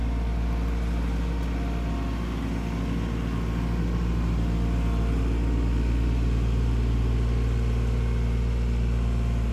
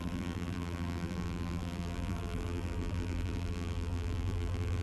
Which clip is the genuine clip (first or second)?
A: first